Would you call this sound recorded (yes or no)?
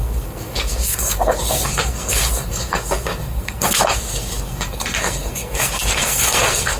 no